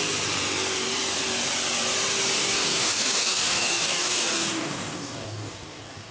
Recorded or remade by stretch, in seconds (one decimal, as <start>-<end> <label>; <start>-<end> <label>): 0.0-2.4 recorded; 2.4-6.1 remade